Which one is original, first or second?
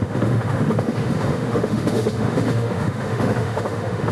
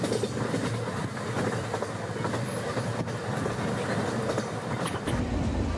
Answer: second